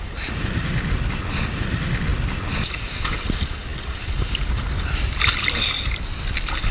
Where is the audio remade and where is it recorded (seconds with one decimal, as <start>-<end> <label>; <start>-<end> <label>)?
0.0-6.7 recorded